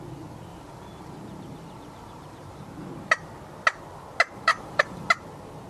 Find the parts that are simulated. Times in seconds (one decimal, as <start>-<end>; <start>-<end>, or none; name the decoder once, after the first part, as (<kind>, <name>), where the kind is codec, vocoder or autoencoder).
0.5-2.6 (vocoder, BigVGAN v2); 4.5-5.1